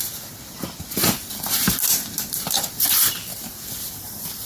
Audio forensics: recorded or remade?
recorded